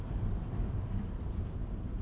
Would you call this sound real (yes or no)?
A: no